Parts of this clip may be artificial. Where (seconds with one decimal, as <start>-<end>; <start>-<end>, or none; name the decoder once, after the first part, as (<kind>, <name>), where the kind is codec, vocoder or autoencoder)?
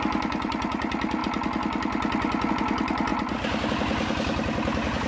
none